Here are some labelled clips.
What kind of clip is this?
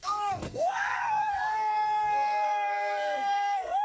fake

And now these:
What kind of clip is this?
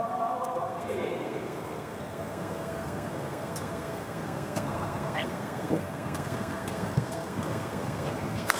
fake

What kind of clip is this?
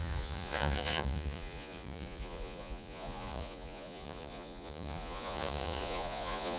fake